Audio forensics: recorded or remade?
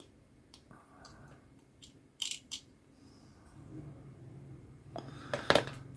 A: remade